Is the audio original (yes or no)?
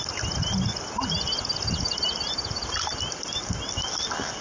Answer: yes